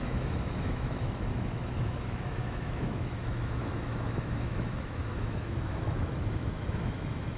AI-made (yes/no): yes